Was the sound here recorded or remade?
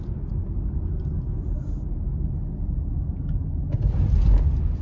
recorded